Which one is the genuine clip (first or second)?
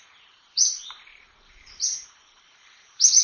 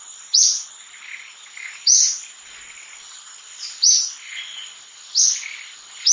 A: second